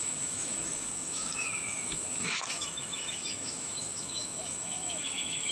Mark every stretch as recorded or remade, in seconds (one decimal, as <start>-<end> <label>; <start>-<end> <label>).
0.0-5.5 remade